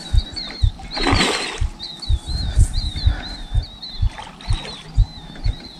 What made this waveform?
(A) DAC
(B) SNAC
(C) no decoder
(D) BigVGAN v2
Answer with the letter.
C